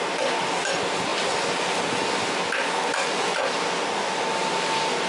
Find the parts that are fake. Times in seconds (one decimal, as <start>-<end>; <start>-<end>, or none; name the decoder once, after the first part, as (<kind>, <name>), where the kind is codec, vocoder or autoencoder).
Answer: none